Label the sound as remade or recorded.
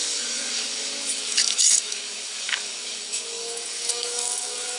remade